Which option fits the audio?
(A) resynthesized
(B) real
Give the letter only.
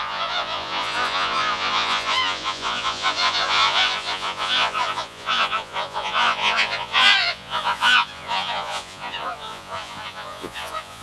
A